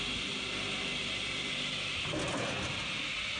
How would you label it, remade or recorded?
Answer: recorded